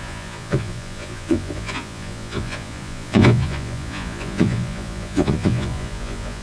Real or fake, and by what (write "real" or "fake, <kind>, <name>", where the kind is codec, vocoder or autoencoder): fake, vocoder, Vocos